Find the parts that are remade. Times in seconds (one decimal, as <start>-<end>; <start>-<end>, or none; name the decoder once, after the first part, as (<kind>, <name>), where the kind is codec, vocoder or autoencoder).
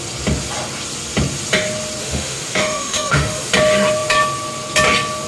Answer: 2.0-3.5 (autoencoder, DAC-VAE)